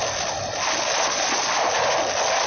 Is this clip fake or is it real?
real